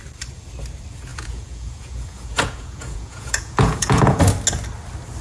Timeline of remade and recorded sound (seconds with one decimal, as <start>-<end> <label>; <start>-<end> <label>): 0.0-1.1 recorded; 1.1-4.2 remade; 4.2-5.2 recorded